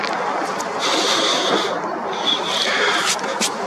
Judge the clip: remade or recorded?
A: recorded